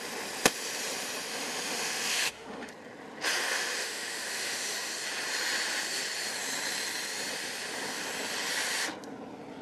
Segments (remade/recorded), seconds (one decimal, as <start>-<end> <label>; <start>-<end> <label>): 0.0-1.3 recorded; 1.3-2.7 remade; 2.7-3.4 recorded; 3.4-5.0 remade; 5.0-9.6 recorded